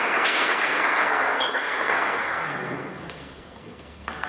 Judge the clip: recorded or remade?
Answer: remade